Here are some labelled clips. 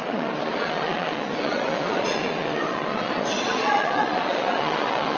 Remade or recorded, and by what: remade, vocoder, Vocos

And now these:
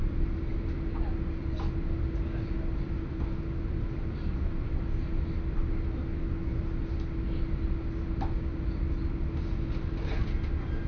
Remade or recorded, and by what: recorded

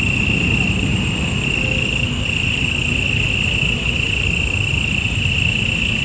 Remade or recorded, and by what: recorded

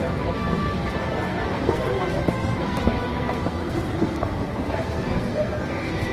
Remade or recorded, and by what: remade, codec, SNAC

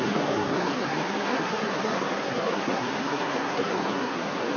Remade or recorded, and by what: remade, codec, SNAC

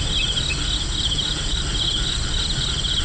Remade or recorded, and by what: recorded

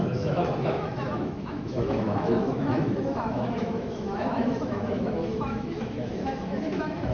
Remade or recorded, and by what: remade, autoencoder, DAC-VAE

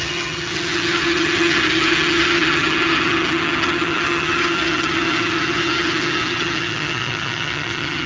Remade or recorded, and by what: remade, vocoder, HiFi-GAN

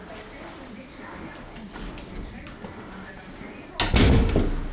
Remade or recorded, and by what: recorded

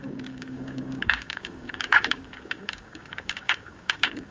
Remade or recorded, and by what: remade, codec, DAC